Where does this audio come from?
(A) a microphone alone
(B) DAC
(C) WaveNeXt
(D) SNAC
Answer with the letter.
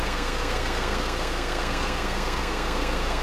D